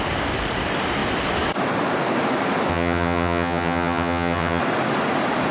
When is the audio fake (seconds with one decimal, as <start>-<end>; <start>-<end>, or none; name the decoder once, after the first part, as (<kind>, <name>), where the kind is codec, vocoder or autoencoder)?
2.7-4.6 (vocoder, HiFi-GAN)